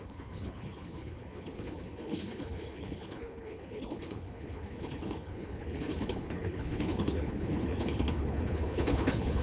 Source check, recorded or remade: remade